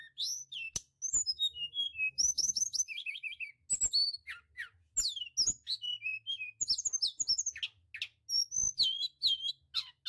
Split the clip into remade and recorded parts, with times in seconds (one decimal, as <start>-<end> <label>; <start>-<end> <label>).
0.0-1.2 recorded; 1.2-3.5 remade; 3.5-10.1 recorded